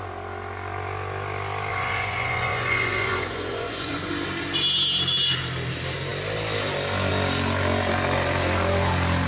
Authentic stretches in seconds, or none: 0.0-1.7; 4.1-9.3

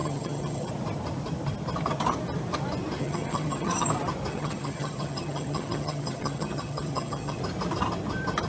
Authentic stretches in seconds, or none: 0.7-3.0; 3.9-4.3; 7.4-8.5

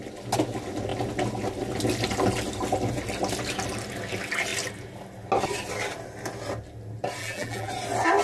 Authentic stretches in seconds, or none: 0.0-7.2; 7.7-8.2

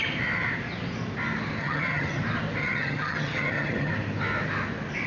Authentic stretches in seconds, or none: 0.0-1.6; 2.2-2.6; 3.9-5.1

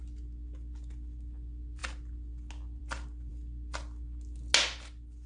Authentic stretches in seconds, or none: 0.0-5.3

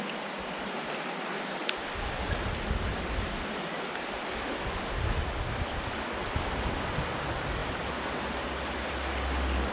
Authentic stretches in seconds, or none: 0.0-9.7

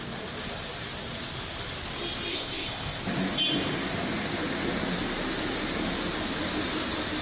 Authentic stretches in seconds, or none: 0.0-2.3; 3.0-7.2